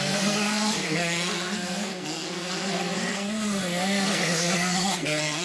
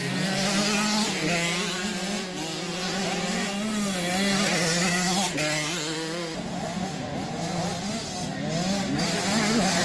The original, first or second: second